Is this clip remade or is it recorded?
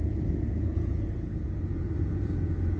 remade